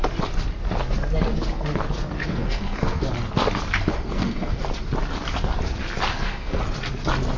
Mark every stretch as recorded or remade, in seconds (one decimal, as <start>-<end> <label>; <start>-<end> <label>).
0.0-2.2 recorded; 2.2-3.0 remade; 3.0-3.9 recorded; 3.9-4.6 remade; 4.6-6.1 recorded; 6.1-6.6 remade; 6.6-7.4 recorded